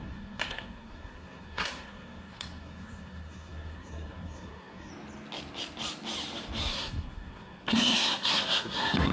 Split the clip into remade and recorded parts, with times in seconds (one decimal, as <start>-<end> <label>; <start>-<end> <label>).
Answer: 0.0-4.9 remade; 4.9-6.7 recorded; 6.7-9.1 remade